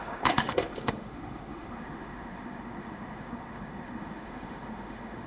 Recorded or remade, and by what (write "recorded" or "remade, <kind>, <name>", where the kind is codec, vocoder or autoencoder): remade, autoencoder, DAC-VAE